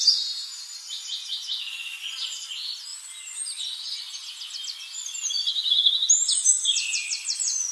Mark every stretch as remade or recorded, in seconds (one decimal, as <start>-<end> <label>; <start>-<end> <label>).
0.0-7.7 recorded